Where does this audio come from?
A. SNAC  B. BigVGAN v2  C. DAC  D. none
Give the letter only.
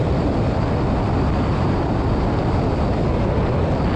D